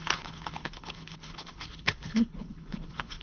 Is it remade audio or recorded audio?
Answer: remade